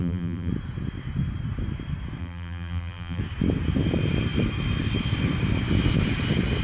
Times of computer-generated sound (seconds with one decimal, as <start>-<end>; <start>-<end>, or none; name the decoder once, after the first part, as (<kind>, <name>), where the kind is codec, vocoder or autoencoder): 0.0-0.5 (vocoder, BigVGAN v2); 2.2-3.2